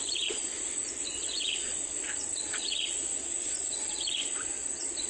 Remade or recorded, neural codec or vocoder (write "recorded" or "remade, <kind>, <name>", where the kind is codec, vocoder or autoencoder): remade, vocoder, Vocos